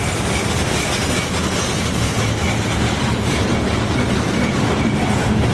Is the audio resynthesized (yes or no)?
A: no